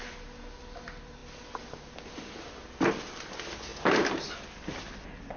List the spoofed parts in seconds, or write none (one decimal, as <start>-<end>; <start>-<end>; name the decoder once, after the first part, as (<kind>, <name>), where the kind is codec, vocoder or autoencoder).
none